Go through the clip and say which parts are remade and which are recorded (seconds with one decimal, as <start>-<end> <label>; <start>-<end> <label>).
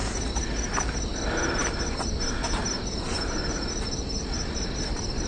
0.0-0.7 recorded; 0.7-1.6 remade; 1.6-4.8 recorded; 4.8-5.3 remade